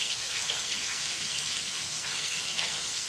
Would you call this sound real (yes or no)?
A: no